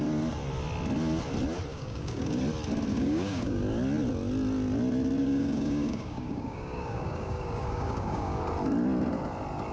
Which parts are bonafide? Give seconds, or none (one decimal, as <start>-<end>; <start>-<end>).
0.0-1.7; 2.4-2.9; 3.6-5.2; 8.4-9.7